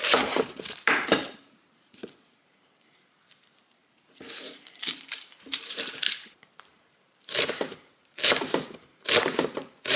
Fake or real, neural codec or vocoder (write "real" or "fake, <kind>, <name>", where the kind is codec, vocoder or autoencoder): fake, vocoder, BigVGAN v2